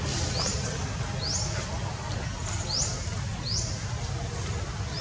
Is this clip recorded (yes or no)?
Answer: yes